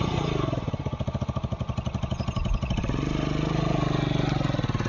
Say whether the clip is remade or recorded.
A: recorded